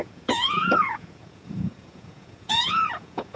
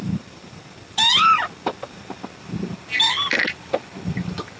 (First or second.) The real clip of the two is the second